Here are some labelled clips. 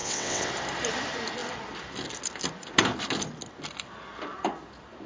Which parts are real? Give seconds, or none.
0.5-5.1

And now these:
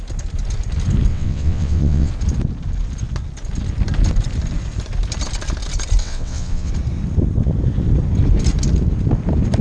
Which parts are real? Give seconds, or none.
0.0-1.1; 2.1-6.0; 6.7-9.6

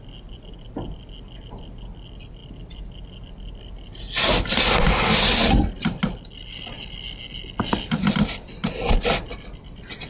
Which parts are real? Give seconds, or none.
0.0-10.1